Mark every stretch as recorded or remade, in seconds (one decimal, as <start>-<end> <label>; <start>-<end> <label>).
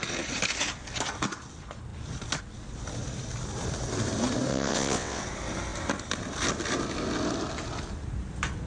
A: 0.0-4.5 recorded; 4.5-5.2 remade; 5.2-8.7 recorded